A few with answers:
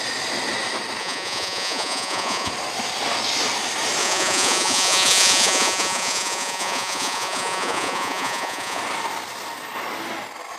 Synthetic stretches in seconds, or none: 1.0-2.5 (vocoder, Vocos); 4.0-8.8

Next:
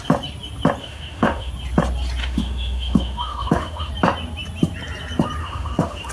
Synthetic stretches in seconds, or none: 0.8-1.5 (autoencoder, DAC-VAE); 2.2-3.9; 5.4-6.1

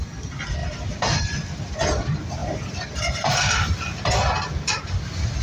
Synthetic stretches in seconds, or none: 0.6-1.2 (vocoder, BigVGAN v2); 2.4-4.0